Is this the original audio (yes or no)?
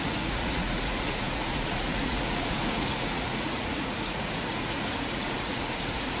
no